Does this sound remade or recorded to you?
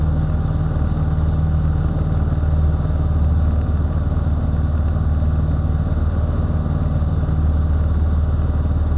recorded